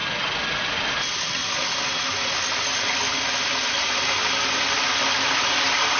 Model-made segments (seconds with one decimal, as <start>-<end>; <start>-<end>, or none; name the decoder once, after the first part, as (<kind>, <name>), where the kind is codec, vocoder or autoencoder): 0.6-1.4 (vocoder, BigVGAN v2); 4.7-6.0